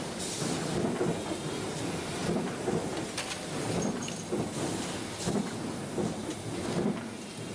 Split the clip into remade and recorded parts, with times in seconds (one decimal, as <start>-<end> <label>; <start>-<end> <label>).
0.0-7.5 recorded